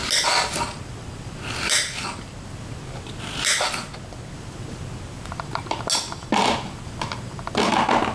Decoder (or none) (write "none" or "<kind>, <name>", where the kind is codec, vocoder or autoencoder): none